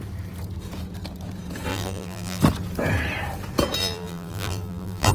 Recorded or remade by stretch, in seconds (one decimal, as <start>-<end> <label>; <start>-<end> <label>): 0.0-1.7 recorded; 1.7-2.4 remade; 2.4-3.8 recorded; 3.8-5.1 remade